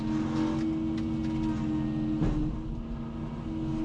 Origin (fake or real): real